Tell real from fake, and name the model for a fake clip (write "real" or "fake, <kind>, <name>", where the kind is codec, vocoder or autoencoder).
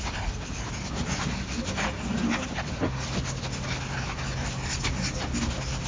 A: real